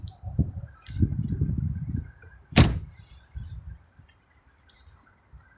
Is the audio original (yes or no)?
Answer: no